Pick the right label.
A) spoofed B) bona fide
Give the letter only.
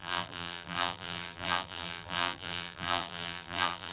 A